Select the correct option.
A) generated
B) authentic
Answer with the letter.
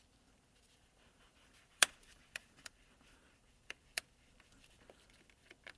A